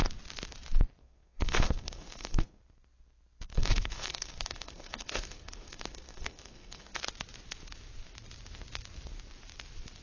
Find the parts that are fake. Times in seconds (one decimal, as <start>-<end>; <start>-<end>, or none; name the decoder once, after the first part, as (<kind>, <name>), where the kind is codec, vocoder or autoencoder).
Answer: 1.0-2.6 (codec, SNAC); 3.5-7.0